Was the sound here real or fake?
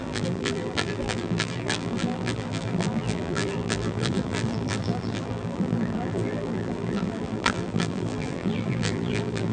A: fake